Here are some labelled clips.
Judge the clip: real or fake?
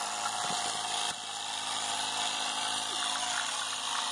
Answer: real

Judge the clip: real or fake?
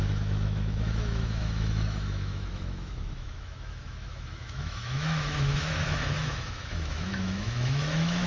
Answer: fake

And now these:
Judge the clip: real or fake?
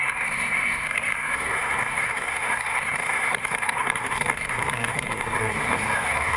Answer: fake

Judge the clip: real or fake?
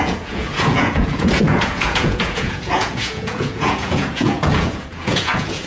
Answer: fake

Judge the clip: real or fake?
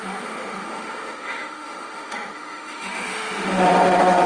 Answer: fake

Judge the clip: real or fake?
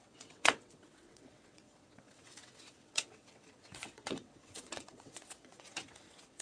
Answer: fake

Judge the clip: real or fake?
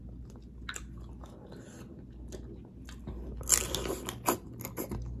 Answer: real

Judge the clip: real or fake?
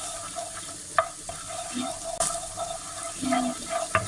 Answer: fake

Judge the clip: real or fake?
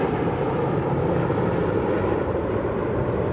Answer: fake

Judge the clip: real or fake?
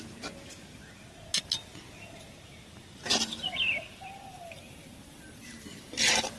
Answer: real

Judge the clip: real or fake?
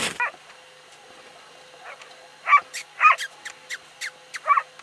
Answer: real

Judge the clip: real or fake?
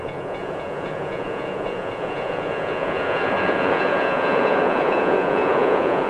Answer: fake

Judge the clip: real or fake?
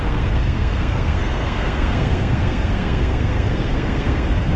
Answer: fake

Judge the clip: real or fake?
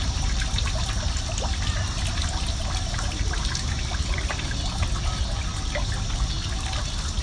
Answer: real